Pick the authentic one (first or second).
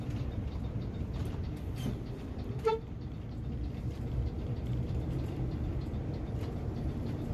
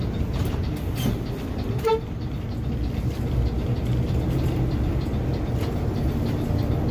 second